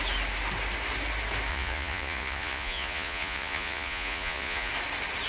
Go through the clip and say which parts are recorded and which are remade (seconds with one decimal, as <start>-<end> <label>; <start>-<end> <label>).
0.0-1.5 recorded; 1.5-4.7 remade; 4.7-5.3 recorded